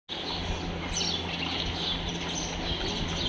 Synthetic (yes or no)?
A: no